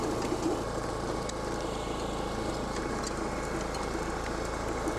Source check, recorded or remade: remade